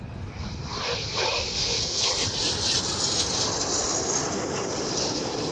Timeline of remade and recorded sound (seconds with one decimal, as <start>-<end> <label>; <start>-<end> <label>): 0.0-1.6 recorded; 1.6-2.1 remade; 2.1-5.5 recorded